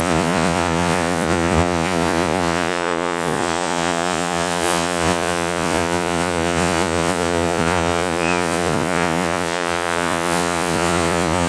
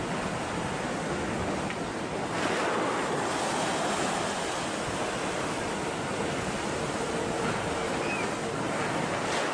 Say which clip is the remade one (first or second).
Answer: first